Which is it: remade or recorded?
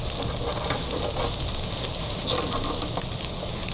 recorded